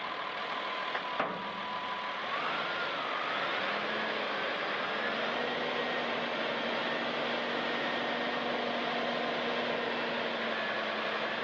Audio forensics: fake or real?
real